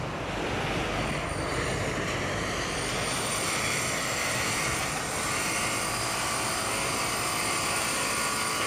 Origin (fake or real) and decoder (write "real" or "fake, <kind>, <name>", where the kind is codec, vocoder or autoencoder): real